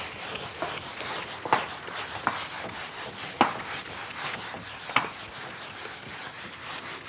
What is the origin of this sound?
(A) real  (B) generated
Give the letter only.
A